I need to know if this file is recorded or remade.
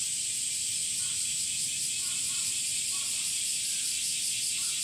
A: remade